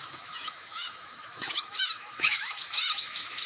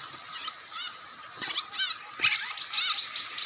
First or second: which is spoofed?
first